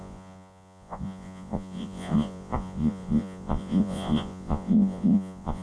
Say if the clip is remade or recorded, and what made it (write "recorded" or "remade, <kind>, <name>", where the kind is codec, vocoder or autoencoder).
remade, vocoder, Vocos